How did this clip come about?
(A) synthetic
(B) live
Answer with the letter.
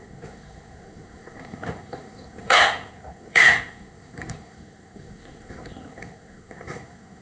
A